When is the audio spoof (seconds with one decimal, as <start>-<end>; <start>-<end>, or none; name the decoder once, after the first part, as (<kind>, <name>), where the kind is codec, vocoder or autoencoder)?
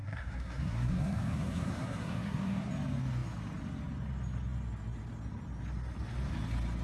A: 0.0-2.7 (codec, SNAC)